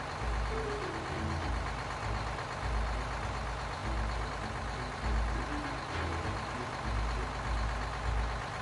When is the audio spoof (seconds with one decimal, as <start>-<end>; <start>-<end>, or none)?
none